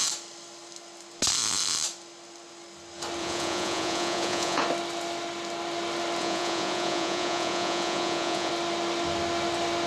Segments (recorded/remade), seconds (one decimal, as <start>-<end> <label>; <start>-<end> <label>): 0.0-3.2 recorded; 3.2-4.6 remade; 4.6-6.2 recorded; 6.2-8.5 remade; 8.5-9.9 recorded